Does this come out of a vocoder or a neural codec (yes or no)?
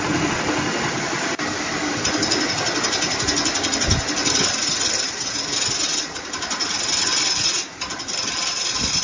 no